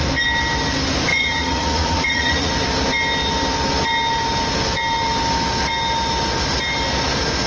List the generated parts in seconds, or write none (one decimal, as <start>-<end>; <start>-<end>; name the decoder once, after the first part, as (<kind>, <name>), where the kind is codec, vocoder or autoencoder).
1.1-2.5 (vocoder, Vocos)